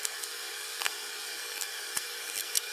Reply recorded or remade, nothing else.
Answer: remade